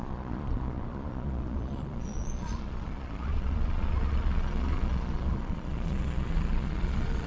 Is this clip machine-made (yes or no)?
yes